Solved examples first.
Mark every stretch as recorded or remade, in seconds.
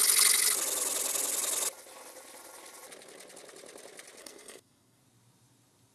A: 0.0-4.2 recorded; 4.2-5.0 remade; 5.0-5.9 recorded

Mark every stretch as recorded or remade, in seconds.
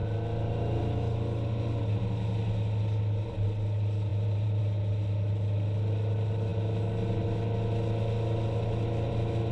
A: 0.0-4.1 recorded; 4.1-4.6 remade; 4.6-9.5 recorded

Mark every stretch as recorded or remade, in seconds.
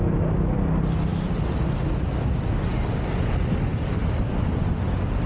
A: 0.0-5.3 recorded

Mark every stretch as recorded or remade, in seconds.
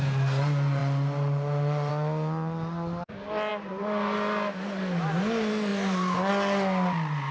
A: 0.0-7.3 recorded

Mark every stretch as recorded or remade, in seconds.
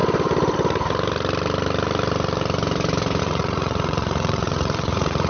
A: 0.0-3.2 recorded; 3.2-5.3 remade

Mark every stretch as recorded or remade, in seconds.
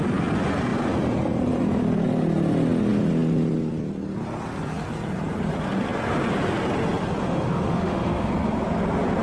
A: 0.0-7.2 recorded; 7.2-8.3 remade; 8.3-9.2 recorded